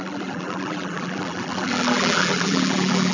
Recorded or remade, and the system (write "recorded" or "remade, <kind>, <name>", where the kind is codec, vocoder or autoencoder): remade, vocoder, BigVGAN v2